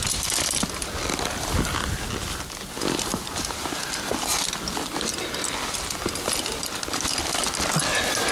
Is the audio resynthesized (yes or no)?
no